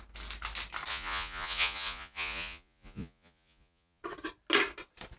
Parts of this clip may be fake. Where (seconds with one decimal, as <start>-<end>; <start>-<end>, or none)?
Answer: 0.9-4.0